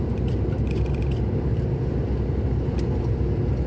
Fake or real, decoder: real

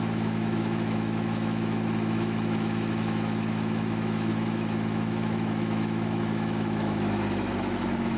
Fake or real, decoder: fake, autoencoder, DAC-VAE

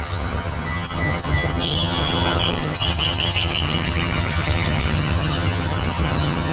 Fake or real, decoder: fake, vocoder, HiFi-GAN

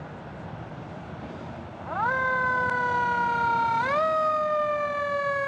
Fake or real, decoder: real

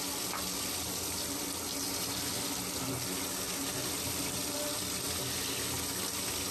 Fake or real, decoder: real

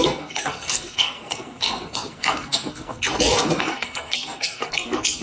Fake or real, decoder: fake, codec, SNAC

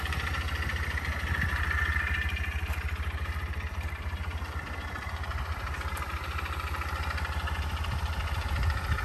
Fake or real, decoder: real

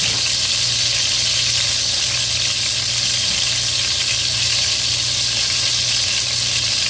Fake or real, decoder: real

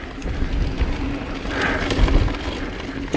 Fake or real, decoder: real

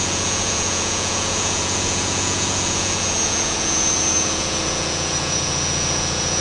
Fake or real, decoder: fake, vocoder, Vocos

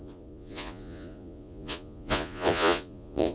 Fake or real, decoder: fake, vocoder, Vocos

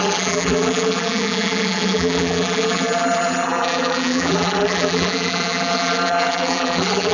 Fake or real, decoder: fake, vocoder, BigVGAN v2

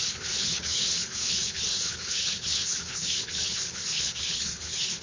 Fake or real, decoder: fake, codec, HILCodec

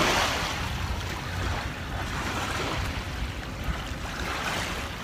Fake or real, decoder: real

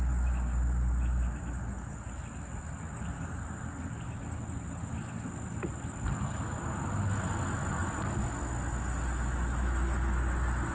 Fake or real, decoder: real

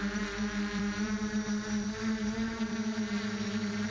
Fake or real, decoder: fake, vocoder, BigVGAN v2